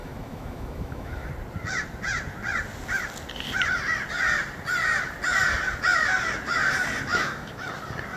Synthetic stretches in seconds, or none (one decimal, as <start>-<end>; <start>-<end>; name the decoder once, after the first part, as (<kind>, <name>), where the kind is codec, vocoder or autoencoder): 0.0-1.3 (autoencoder, DAC-VAE); 7.1-7.7